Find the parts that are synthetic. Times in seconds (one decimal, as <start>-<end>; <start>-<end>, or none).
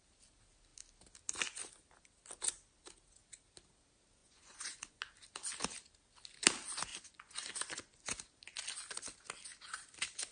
4.2-5.0; 6.9-8.0